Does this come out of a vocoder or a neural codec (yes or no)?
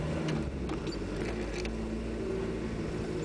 no